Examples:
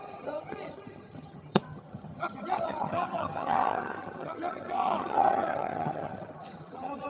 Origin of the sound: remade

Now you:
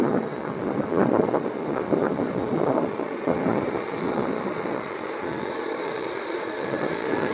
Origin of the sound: remade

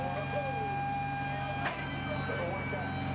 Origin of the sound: recorded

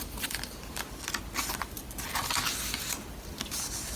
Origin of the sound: recorded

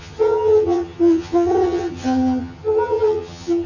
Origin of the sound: remade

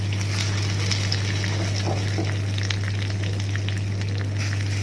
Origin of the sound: recorded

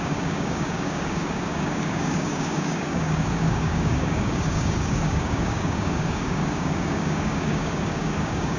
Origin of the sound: remade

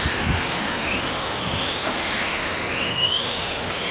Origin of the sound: remade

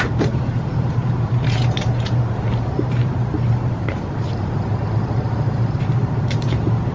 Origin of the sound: remade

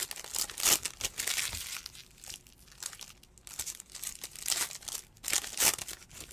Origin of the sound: recorded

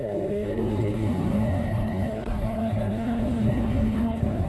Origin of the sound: remade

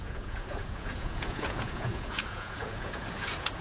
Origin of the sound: remade